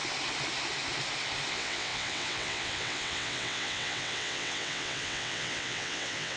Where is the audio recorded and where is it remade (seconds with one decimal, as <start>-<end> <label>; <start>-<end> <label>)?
0.0-1.5 recorded; 1.5-6.4 remade